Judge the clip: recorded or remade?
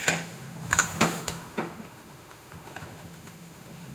remade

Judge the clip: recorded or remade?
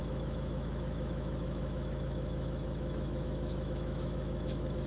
remade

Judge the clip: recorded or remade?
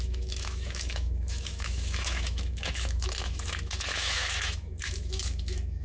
remade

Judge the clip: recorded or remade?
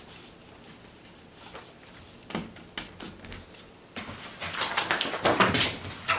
recorded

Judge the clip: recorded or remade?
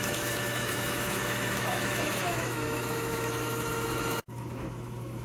remade